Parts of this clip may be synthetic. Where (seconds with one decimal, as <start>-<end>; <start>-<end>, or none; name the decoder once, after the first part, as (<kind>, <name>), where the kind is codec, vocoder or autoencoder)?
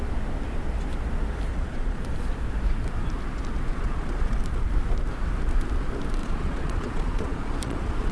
1.5-2.0 (vocoder, Vocos); 3.7-4.4; 6.2-8.1